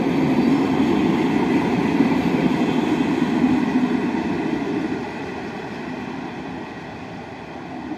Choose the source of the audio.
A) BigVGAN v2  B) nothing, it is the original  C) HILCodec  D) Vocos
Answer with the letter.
B